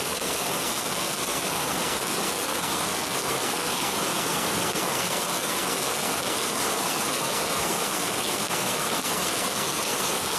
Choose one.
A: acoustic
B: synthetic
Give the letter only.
B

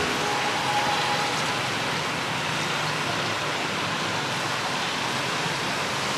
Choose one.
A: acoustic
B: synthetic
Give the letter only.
A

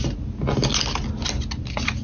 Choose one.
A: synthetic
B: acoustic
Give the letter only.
B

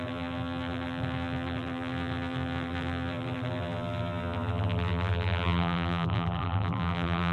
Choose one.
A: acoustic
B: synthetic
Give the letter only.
B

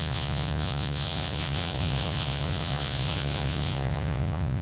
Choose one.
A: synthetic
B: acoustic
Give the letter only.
A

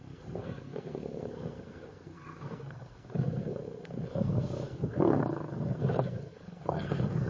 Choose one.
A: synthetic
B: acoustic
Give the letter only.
A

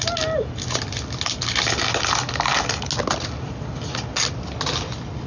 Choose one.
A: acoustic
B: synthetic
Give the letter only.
A